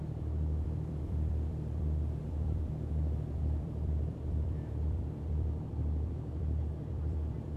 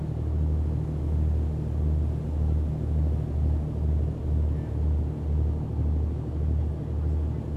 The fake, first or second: first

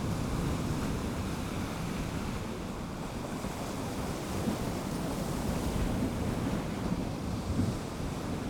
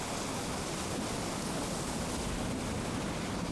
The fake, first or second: first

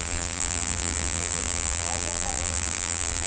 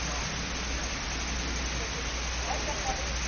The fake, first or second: first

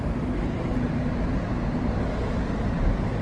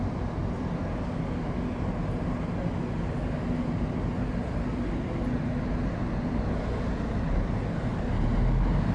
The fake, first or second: first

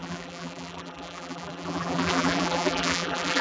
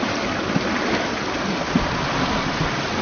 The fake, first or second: first